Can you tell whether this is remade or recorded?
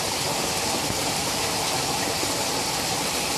recorded